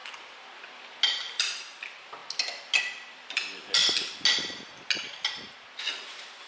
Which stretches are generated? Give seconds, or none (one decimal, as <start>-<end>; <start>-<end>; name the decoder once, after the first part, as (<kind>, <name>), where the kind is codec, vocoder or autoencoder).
1.4-2.2 (vocoder, BigVGAN v2); 2.8-3.8